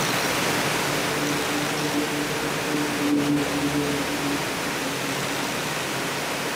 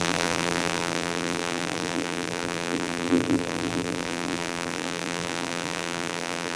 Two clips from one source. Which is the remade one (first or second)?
second